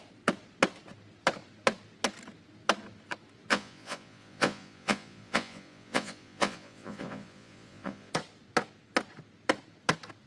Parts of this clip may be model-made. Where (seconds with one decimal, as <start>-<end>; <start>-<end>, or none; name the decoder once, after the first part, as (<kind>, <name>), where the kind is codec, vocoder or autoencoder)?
3.5-8.1 (vocoder, Vocos)